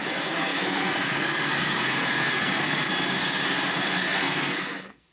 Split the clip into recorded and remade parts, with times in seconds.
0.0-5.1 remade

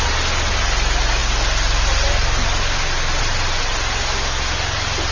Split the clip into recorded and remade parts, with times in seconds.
0.0-5.1 recorded

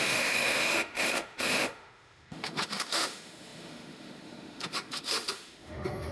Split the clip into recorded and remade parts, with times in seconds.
0.0-6.1 remade

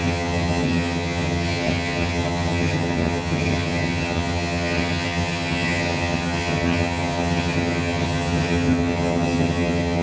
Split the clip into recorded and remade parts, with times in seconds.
0.0-10.0 remade

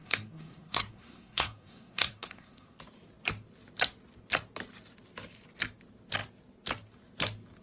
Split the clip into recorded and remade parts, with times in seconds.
0.0-2.8 remade; 2.8-7.6 recorded